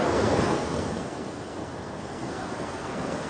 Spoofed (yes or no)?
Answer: yes